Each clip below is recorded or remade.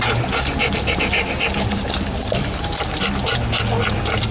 recorded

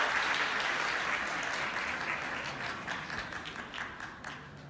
recorded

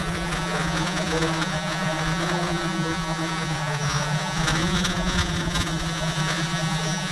remade